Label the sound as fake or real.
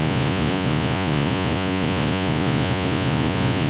fake